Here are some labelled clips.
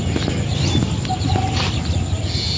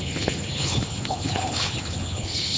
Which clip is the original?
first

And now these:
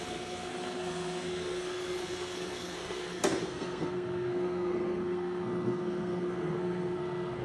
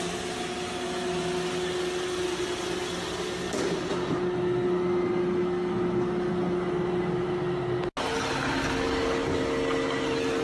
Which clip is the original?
second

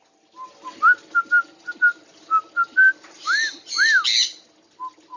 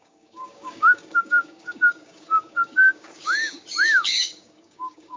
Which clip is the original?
first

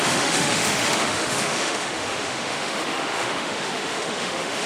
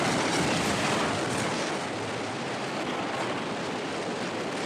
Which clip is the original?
second